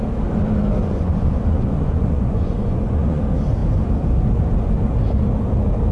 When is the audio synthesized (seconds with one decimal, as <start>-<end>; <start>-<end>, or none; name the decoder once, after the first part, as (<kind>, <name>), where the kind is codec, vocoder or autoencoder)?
0.8-3.2 (vocoder, Vocos)